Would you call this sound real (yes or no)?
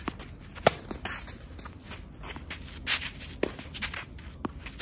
yes